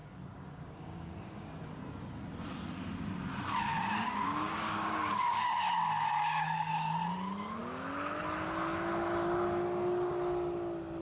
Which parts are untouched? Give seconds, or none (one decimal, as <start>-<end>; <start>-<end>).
1.5-3.7; 6.7-11.0